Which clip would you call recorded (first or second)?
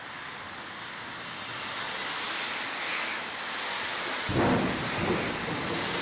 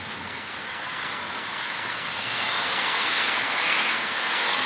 first